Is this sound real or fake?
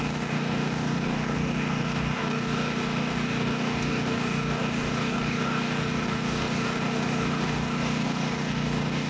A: fake